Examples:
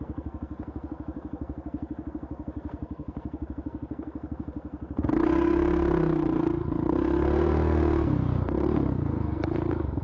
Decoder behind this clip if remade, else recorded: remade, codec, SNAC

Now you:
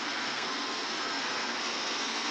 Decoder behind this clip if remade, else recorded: remade, codec, SNAC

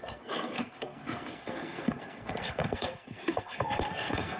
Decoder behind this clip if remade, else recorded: remade, codec, SNAC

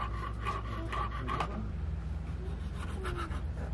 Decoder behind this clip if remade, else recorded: recorded